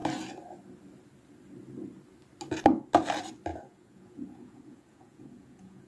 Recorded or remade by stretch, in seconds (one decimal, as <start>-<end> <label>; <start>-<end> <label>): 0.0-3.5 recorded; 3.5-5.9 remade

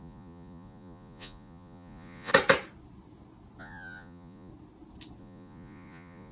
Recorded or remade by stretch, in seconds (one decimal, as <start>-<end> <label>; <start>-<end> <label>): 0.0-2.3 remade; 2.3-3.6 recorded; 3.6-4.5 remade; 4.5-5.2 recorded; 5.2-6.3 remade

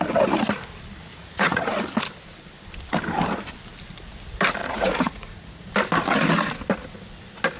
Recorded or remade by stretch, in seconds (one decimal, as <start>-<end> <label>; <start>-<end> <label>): 0.0-1.1 recorded; 1.1-1.7 remade; 1.7-4.6 recorded; 4.6-5.7 remade; 5.7-7.6 recorded

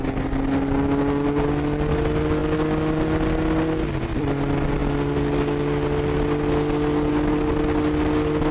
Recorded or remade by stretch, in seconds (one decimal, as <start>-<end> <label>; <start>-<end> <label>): 0.0-8.5 recorded